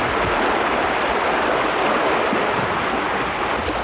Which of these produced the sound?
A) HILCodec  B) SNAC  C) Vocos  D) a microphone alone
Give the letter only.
D